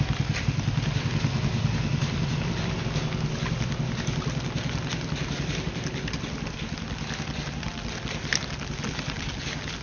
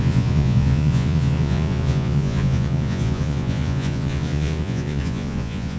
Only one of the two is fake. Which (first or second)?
second